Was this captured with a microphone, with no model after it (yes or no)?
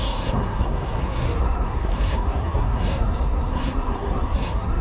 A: no